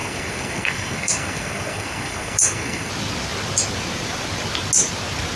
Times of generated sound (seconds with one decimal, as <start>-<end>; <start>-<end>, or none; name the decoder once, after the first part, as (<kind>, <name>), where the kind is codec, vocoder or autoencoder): 0.0-2.9 (codec, SNAC)